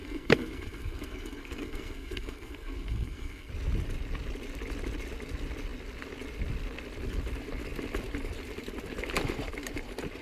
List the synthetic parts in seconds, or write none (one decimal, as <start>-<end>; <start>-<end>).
0.0-3.5